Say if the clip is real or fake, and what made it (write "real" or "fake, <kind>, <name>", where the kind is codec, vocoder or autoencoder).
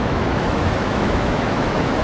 fake, autoencoder, DAC-VAE